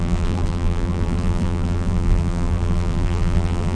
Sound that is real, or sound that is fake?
fake